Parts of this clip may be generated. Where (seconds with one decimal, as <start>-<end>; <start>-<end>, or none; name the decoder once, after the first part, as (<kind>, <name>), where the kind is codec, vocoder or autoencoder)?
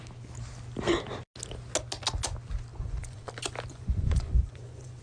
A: 2.7-3.3 (vocoder, Vocos); 3.7-5.0